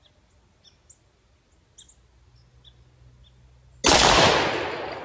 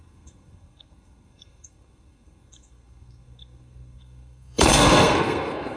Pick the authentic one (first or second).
first